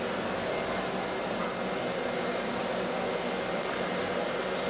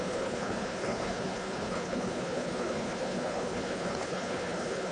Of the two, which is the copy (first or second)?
second